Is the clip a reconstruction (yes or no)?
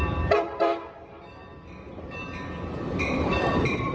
yes